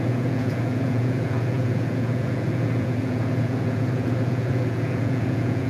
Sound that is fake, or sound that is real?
fake